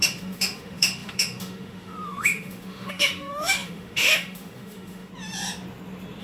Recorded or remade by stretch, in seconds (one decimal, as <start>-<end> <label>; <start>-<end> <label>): 0.0-5.1 remade; 5.1-6.2 recorded